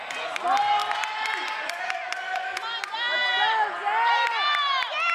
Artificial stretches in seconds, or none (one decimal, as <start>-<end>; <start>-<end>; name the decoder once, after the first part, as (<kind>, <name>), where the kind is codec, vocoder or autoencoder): none